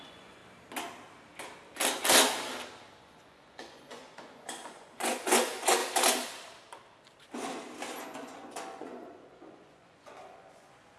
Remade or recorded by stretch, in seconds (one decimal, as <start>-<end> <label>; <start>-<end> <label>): 0.0-0.4 remade; 0.4-3.0 recorded; 3.0-5.8 remade; 5.8-8.0 recorded; 8.0-11.0 remade

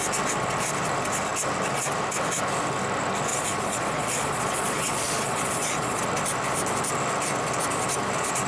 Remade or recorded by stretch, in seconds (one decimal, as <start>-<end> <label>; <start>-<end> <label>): 0.0-3.3 recorded; 3.3-6.0 remade; 6.0-8.5 recorded

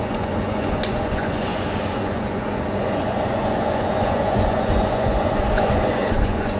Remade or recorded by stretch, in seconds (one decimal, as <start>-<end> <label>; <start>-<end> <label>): 0.0-6.6 remade

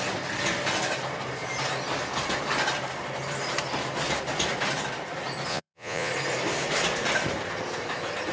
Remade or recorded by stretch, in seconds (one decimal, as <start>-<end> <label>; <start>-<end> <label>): 0.0-5.5 recorded; 5.5-6.1 remade; 6.1-8.3 recorded

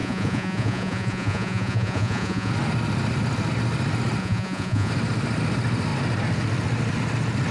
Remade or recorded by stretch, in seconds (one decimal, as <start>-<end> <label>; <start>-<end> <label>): 0.0-2.5 remade; 2.5-4.2 recorded; 4.2-4.9 remade; 4.9-7.5 recorded

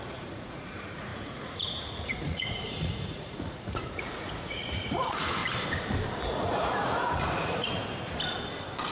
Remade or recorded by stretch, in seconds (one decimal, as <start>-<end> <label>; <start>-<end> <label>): 0.0-5.4 remade; 5.4-6.1 recorded; 6.1-7.8 remade; 7.8-8.9 recorded

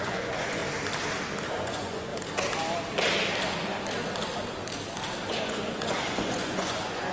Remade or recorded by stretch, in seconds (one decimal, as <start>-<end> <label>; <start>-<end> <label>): 0.0-0.6 remade; 0.6-1.5 recorded; 1.5-2.1 remade; 2.1-5.3 recorded; 5.3-7.1 remade

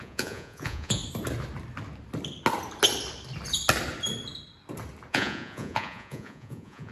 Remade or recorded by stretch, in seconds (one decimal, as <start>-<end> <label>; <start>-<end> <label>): 0.0-1.0 remade; 1.0-5.1 recorded; 5.1-6.9 remade